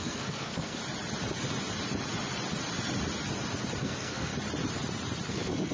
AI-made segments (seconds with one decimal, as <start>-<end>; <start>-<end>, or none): 0.0-0.8; 3.8-4.3; 5.3-5.7